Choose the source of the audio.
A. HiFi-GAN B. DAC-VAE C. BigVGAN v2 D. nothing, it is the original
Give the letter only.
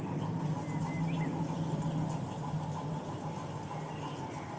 D